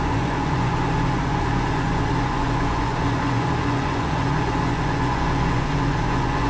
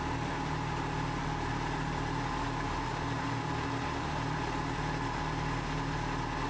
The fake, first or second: first